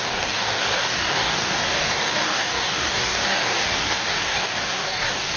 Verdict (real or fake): fake